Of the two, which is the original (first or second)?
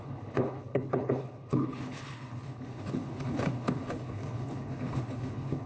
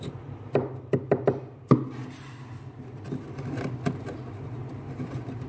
second